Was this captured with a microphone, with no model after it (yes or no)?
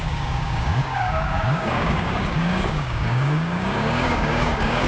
no